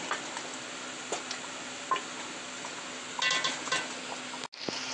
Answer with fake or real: real